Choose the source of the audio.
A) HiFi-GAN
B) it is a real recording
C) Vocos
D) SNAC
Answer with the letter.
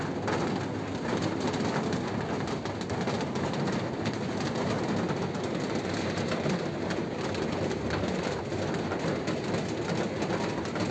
B